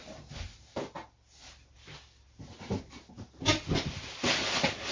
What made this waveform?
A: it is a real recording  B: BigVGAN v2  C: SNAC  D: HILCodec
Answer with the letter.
A